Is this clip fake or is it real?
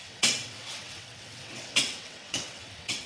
fake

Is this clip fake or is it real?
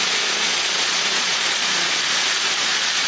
fake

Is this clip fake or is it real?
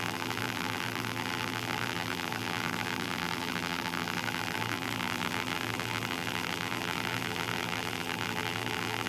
fake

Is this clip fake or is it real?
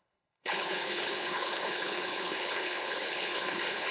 fake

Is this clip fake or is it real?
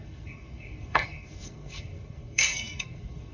fake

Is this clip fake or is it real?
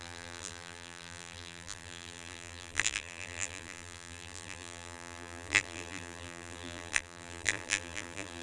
fake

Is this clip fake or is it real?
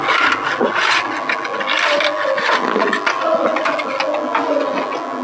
real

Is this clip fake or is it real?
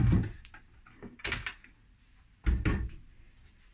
real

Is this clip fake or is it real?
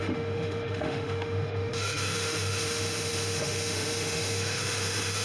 fake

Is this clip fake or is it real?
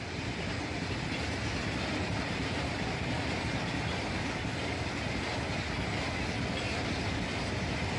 real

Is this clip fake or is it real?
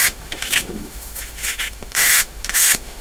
fake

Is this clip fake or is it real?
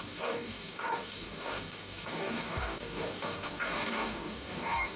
fake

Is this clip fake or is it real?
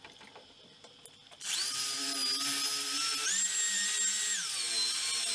real